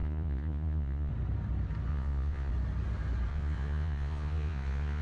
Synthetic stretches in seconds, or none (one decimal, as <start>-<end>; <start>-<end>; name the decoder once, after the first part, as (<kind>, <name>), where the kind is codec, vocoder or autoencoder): 0.0-1.1 (vocoder, Vocos); 1.9-2.5; 3.3-5.0